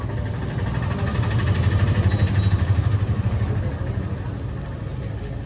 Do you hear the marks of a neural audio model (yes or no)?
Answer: no